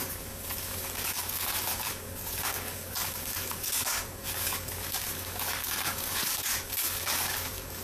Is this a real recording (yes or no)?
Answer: no